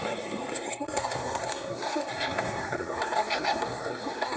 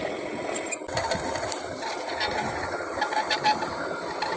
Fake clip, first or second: first